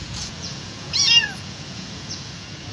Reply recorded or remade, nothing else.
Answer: remade